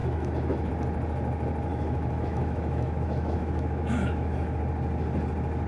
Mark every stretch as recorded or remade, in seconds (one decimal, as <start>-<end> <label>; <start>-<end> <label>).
0.0-0.7 remade; 0.7-1.7 recorded; 1.7-4.6 remade; 4.6-5.7 recorded